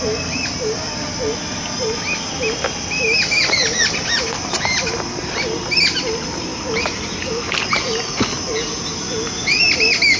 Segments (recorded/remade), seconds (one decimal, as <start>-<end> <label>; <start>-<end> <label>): 0.0-10.2 recorded